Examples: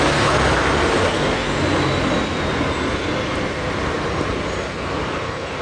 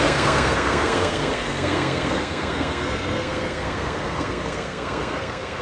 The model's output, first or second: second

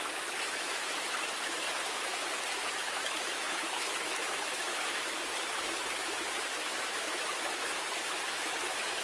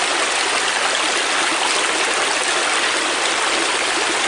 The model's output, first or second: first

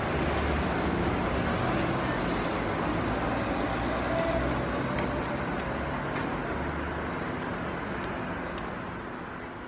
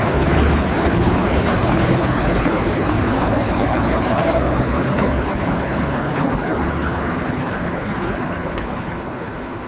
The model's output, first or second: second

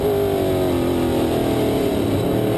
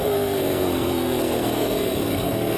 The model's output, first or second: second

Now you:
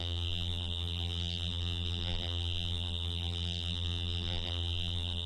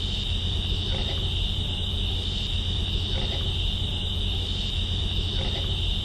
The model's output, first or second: first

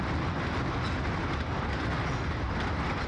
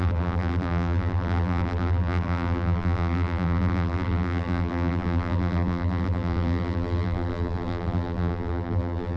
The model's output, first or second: second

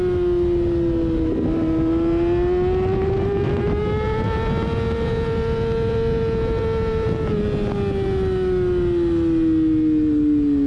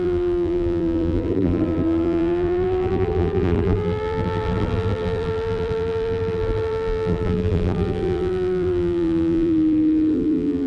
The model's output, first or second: second